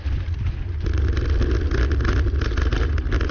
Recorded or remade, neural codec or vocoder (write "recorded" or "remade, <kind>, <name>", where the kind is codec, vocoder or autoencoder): recorded